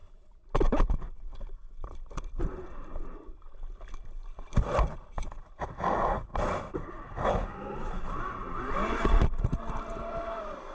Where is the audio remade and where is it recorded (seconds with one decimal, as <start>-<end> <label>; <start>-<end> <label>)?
0.0-10.7 recorded